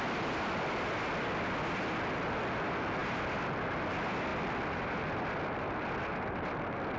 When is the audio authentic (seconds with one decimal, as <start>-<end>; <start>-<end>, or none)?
0.0-7.0